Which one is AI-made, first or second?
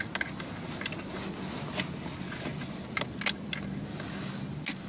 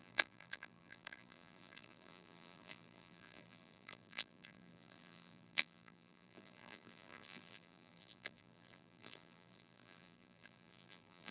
second